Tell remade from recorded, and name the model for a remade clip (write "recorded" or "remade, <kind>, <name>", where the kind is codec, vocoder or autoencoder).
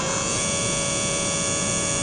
remade, vocoder, Vocos